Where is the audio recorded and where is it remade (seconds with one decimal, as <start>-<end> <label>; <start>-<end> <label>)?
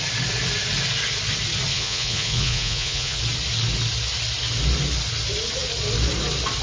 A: 0.0-1.7 recorded; 1.7-3.2 remade; 3.2-6.6 recorded